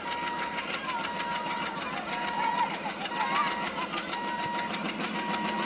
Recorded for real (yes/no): yes